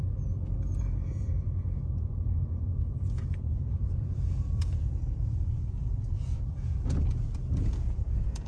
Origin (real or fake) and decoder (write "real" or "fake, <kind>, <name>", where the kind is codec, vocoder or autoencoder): fake, vocoder, Vocos